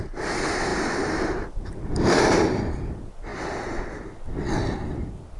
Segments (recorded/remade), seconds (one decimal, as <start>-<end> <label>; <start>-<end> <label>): 0.0-0.7 recorded; 0.7-2.6 remade; 2.6-5.4 recorded